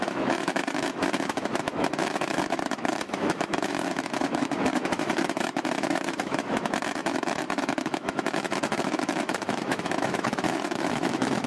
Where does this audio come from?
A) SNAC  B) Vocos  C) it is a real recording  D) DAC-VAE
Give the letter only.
D